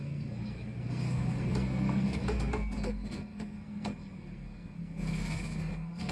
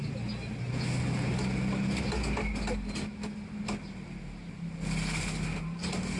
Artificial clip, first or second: first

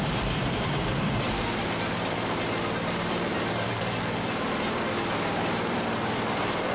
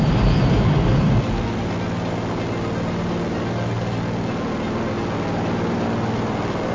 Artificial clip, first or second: first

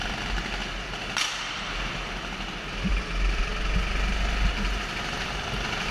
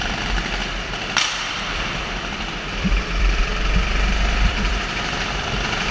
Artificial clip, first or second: second